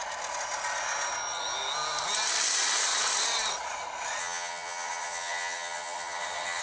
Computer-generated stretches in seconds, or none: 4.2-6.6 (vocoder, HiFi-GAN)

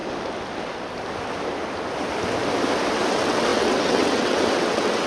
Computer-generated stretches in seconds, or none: 3.1-5.1 (vocoder, WaveNeXt)

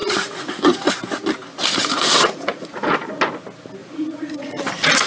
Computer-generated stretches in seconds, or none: 0.0-0.9 (vocoder, Vocos); 1.8-3.1; 3.8-4.6

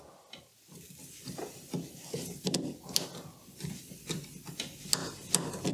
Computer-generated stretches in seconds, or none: none

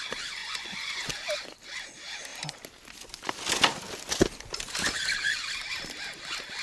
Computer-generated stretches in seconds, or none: 0.4-1.0 (vocoder, Vocos)

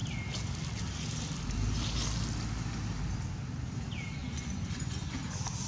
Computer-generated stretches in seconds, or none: 4.2-5.2 (vocoder, Vocos)

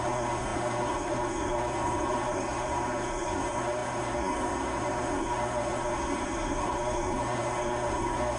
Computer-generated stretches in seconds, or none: 0.0-8.4 (codec, SNAC)